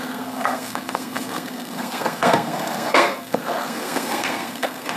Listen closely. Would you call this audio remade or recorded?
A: remade